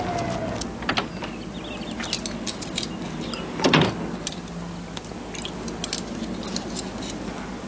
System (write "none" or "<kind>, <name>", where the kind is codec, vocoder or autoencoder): none